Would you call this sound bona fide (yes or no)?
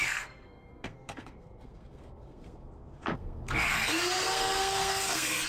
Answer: no